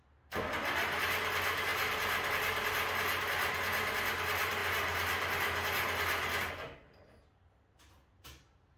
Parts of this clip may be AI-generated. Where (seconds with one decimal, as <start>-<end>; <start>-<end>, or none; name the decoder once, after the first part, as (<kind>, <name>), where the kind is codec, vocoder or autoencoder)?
none